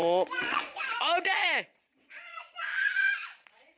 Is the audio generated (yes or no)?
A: yes